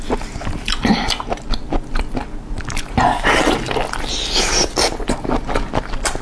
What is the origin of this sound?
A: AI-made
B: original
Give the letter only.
B